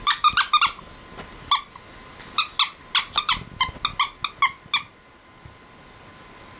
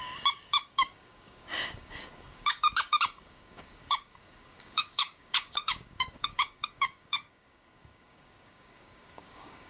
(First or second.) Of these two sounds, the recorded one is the first